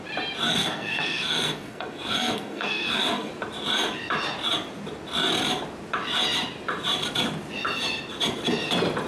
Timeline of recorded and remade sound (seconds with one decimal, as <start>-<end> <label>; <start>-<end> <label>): 0.0-0.5 recorded; 0.5-3.3 remade; 3.3-9.1 recorded